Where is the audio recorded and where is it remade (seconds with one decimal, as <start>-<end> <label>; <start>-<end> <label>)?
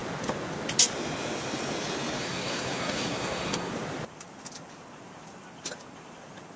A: 0.0-2.2 recorded; 2.2-3.7 remade; 3.7-6.6 recorded